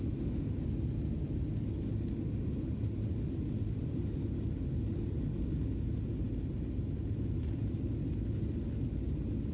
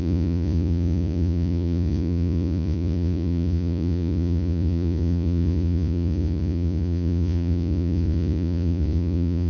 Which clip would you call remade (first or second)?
second